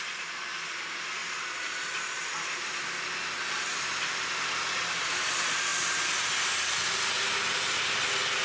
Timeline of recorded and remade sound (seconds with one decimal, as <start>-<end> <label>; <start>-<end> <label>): 0.0-8.4 recorded

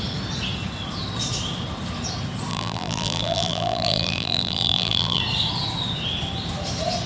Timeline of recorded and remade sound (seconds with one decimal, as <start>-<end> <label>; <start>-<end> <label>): 0.0-2.5 recorded; 2.5-5.2 remade; 5.2-7.1 recorded